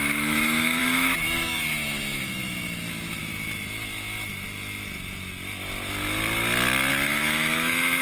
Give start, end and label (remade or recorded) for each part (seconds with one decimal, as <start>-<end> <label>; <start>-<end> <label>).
0.0-3.2 remade; 3.2-6.9 recorded; 6.9-8.0 remade